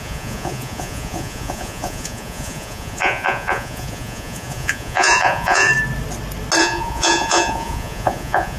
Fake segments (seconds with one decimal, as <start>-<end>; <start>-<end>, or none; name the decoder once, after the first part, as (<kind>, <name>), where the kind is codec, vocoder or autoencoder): 0.0-5.7 (vocoder, Vocos); 6.6-8.6